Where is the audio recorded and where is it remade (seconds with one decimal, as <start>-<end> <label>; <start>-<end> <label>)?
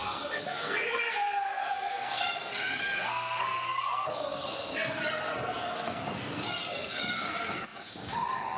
0.0-8.6 remade